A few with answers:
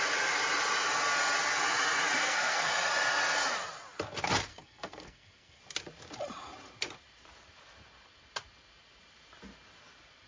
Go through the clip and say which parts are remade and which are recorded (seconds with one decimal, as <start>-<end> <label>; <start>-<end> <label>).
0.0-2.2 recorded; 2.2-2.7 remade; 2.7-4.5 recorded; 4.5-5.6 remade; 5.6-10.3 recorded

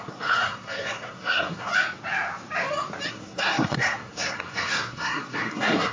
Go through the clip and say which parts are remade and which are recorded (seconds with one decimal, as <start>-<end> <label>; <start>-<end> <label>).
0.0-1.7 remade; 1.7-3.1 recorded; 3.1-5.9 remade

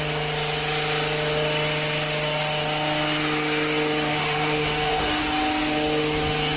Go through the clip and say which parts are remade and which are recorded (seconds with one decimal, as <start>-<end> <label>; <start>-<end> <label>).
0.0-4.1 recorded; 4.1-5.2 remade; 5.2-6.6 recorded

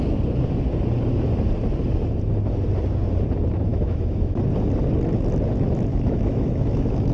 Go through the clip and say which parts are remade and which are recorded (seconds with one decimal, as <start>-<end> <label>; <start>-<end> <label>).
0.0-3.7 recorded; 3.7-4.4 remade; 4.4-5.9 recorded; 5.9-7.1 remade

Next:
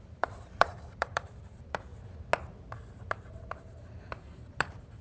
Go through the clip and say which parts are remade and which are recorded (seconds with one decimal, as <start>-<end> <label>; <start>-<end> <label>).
0.0-1.9 remade; 1.9-3.1 recorded; 3.1-5.0 remade

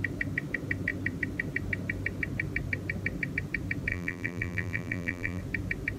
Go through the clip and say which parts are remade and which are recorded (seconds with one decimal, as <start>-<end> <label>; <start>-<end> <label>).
0.0-3.9 recorded; 3.9-5.4 remade; 5.4-6.0 recorded

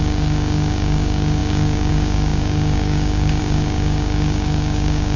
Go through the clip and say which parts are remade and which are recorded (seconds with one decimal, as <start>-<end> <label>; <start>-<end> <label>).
0.0-5.2 remade